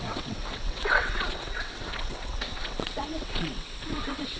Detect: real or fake fake